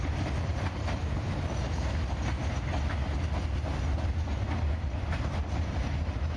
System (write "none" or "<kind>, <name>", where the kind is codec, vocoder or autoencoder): none